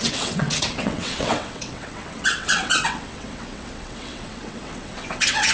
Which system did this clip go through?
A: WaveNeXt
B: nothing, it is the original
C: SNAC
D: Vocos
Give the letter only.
A